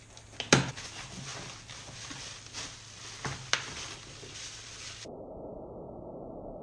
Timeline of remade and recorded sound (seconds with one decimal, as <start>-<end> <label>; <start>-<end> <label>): 0.0-6.6 recorded